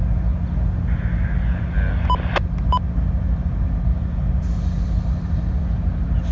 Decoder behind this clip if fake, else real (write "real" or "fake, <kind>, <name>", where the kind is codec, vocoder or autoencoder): real